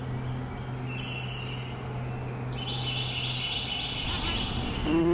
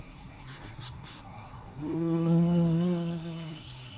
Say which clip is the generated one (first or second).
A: second